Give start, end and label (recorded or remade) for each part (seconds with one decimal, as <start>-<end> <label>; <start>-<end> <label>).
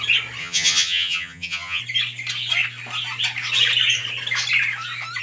0.0-0.4 recorded; 0.4-1.8 remade; 1.8-5.2 recorded